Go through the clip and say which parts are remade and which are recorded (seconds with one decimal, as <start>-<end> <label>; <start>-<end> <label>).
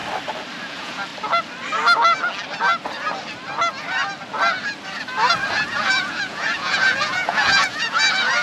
0.0-0.6 recorded; 0.6-1.1 remade; 1.1-5.5 recorded; 5.5-8.4 remade